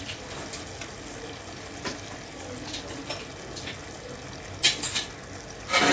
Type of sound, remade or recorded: recorded